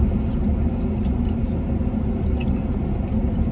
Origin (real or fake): real